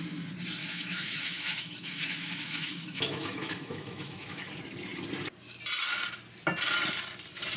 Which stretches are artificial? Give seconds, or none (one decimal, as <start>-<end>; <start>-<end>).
0.6-4.5